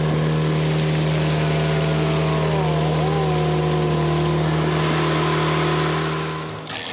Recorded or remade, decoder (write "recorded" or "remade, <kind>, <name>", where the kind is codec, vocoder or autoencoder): recorded